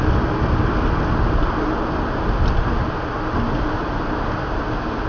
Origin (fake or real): real